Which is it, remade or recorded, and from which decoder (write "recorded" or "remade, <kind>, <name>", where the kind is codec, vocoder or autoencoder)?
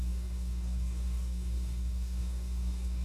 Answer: remade, codec, DAC